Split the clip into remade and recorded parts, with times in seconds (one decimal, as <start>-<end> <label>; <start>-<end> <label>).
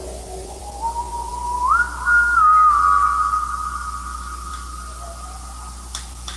0.0-0.6 remade; 0.6-6.4 recorded